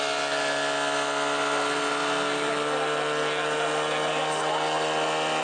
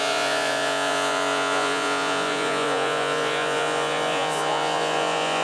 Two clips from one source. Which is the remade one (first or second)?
second